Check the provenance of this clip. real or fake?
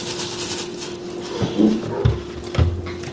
real